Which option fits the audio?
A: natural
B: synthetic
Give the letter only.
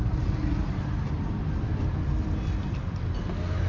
A